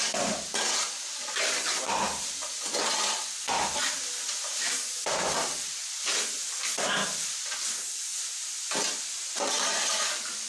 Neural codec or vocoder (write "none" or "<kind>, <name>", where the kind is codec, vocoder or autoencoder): none